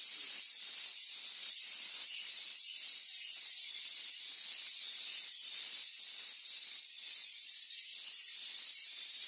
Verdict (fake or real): fake